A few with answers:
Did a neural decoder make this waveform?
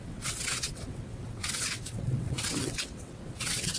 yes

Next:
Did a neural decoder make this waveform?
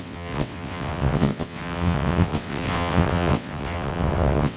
yes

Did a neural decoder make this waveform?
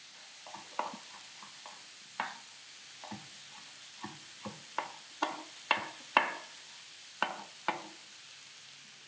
no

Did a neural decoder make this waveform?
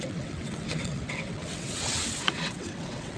yes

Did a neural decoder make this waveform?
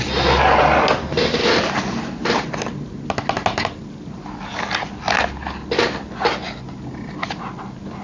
no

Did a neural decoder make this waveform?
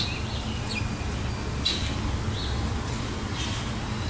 no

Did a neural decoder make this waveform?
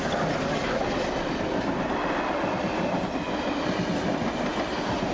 no